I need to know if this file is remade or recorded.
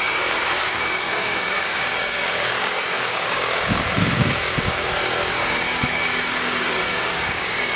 remade